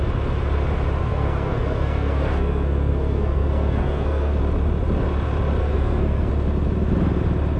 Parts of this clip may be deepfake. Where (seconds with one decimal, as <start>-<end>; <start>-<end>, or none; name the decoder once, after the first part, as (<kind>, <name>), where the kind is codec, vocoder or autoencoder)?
1.0-4.4 (codec, SNAC); 5.6-6.3